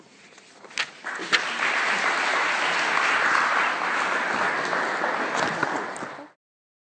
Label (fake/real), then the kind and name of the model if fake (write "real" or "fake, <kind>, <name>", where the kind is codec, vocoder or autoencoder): real